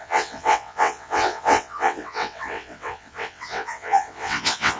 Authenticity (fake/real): fake